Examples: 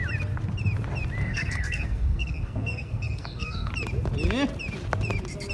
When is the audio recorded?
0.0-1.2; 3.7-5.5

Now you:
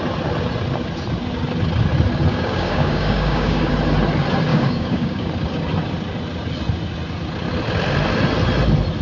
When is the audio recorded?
0.0-2.3; 3.7-4.5; 5.3-9.0

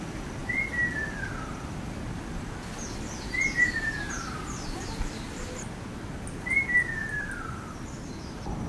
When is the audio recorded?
0.0-8.7

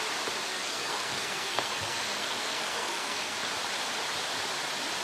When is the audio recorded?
0.0-0.5; 3.5-5.0